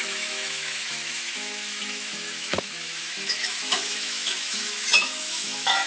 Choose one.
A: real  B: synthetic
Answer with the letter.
B